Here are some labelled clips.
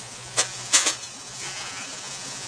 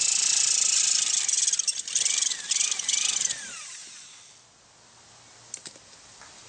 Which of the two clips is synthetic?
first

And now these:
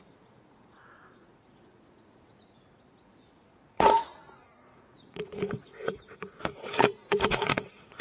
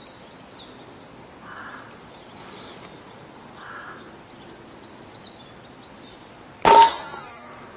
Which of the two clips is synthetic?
first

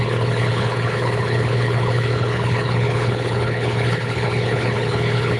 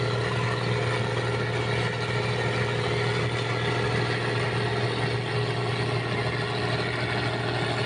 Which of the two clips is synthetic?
first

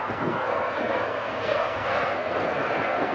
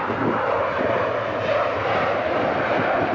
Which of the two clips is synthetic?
first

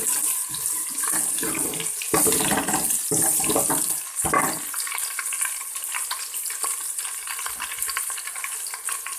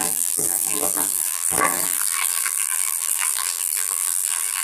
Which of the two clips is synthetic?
second